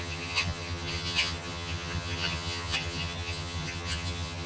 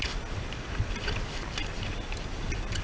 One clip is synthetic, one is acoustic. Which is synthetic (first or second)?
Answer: first